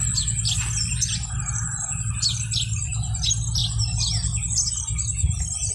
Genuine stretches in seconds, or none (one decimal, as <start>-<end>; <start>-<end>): 0.0-5.7